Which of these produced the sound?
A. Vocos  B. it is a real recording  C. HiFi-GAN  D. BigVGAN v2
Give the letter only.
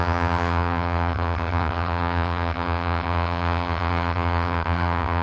C